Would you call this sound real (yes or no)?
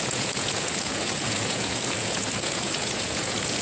no